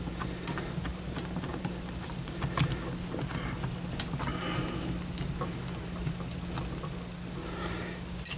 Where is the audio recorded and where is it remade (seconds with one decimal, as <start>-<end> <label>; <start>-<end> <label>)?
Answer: 0.0-0.9 recorded; 0.9-2.7 remade; 2.7-8.4 recorded